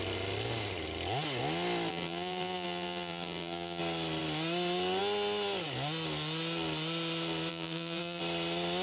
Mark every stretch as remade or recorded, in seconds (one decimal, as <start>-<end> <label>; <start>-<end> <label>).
0.0-1.9 recorded; 1.9-3.8 remade; 3.8-7.5 recorded; 7.5-8.2 remade; 8.2-8.8 recorded